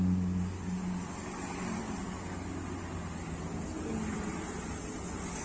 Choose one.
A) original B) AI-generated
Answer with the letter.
A